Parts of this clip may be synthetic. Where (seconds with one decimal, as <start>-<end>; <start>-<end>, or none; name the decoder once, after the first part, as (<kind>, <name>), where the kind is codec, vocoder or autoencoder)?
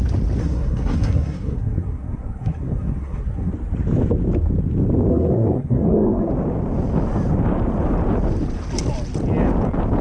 0.4-3.5 (codec, SNAC); 5.1-6.3